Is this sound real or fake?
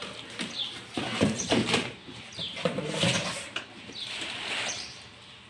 fake